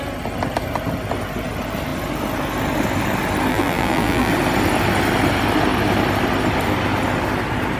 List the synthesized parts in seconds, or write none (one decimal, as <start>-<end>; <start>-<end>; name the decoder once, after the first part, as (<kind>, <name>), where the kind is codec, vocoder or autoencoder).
3.5-4.3 (vocoder, BigVGAN v2)